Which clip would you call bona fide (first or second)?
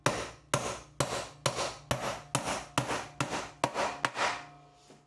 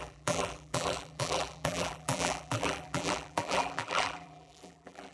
first